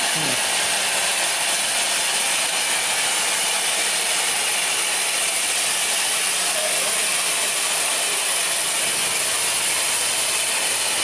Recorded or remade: recorded